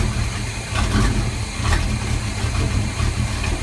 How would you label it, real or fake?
real